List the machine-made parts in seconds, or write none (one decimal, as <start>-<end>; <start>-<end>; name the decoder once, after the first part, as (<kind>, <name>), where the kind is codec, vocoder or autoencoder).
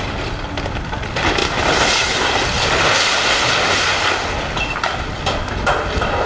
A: none